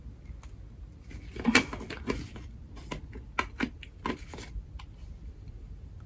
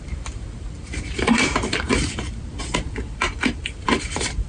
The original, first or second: first